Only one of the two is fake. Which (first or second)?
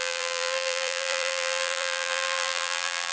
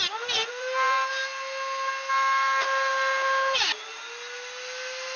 first